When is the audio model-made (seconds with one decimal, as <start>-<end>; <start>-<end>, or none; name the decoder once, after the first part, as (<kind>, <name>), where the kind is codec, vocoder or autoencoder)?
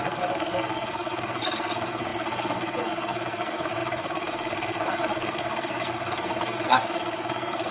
0.0-7.7 (codec, SNAC)